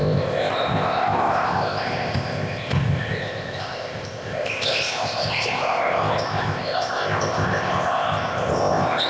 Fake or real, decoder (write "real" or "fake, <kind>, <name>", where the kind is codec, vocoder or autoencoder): fake, codec, ZipCodec